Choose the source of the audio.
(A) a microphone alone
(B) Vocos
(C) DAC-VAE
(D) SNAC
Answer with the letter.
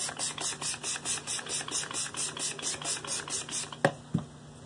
A